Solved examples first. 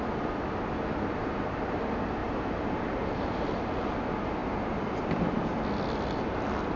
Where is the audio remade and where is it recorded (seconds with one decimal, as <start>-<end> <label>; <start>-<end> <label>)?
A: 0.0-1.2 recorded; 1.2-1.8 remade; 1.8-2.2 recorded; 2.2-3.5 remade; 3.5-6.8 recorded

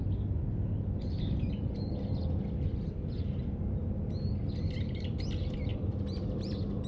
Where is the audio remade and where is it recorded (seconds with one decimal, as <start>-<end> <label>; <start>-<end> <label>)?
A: 0.0-5.7 recorded; 5.7-6.9 remade

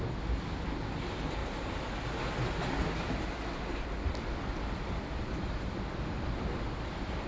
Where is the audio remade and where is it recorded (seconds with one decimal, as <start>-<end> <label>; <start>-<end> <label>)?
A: 0.0-7.3 recorded